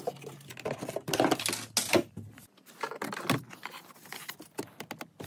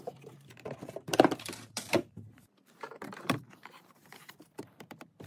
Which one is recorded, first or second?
first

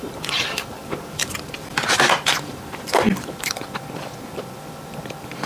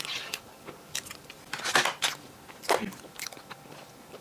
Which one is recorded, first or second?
second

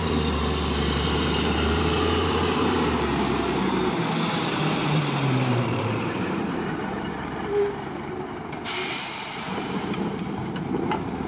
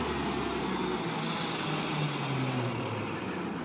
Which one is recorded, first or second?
second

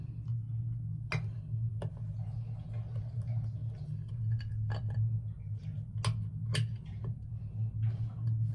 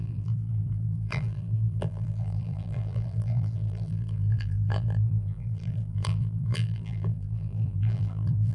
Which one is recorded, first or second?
first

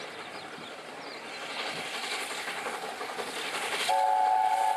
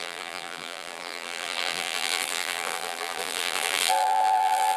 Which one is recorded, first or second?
first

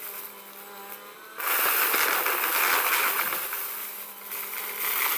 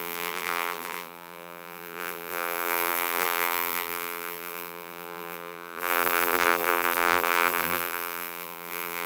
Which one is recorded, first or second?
first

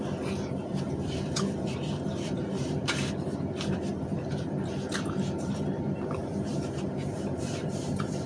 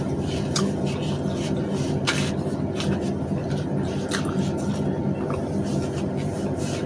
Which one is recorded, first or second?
second